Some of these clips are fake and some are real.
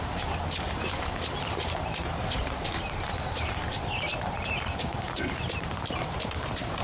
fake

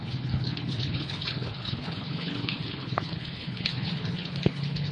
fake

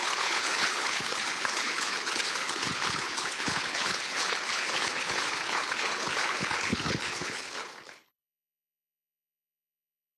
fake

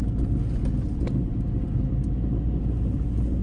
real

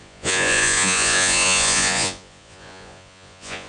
fake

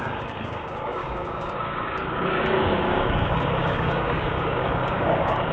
fake